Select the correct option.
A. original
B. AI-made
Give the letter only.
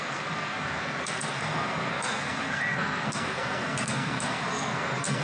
B